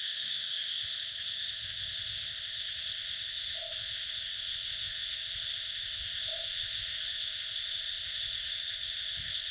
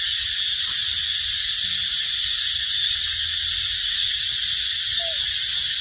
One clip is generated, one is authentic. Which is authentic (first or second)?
second